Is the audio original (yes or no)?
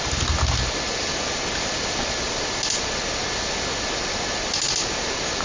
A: yes